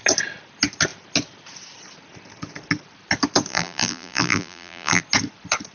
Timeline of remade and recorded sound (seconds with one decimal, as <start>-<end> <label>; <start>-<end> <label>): 0.0-3.5 recorded; 3.5-5.0 remade; 5.0-5.7 recorded